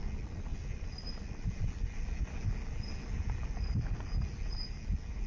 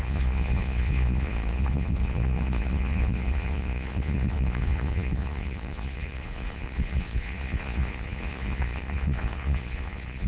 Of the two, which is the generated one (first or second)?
second